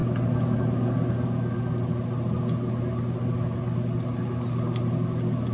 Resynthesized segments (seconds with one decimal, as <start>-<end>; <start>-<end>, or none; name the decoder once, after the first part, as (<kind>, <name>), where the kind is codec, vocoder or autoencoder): none

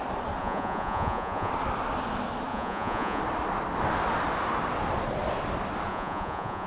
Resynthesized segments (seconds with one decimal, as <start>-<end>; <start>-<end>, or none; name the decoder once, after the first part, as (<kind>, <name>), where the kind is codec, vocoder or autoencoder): 0.4-1.5 (vocoder, Vocos); 2.5-3.2; 5.9-6.7